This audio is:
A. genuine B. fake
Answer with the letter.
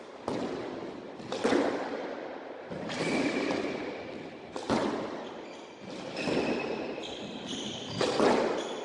A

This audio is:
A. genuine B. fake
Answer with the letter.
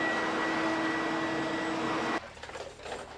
A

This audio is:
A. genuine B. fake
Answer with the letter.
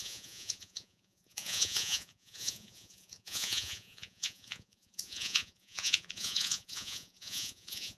B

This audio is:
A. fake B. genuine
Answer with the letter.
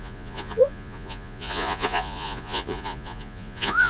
A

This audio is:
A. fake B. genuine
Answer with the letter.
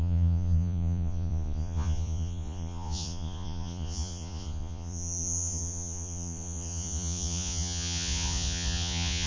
A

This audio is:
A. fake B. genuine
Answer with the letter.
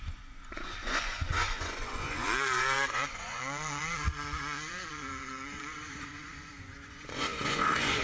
A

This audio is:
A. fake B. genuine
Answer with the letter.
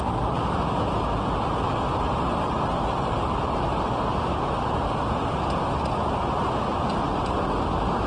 B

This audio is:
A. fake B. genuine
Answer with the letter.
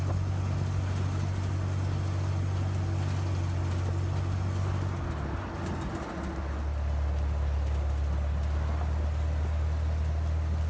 B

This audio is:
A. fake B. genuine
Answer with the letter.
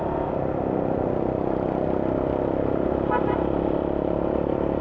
B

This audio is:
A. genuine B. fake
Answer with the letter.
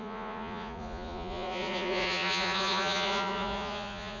B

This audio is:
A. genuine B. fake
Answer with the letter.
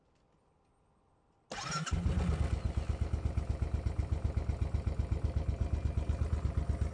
A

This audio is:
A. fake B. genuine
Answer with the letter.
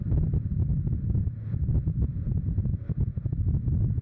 B